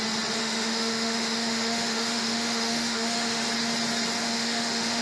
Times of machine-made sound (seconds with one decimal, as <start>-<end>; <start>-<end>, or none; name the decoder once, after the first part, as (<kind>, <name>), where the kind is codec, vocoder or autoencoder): 0.4-3.4 (autoencoder, DAC-VAE); 4.2-5.0